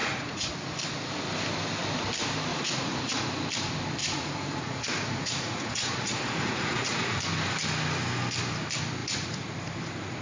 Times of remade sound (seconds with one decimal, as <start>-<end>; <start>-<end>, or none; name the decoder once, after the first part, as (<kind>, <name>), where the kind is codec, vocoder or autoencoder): 0.0-0.5 (vocoder, Vocos); 2.5-3.2; 4.0-7.2; 9.0-9.5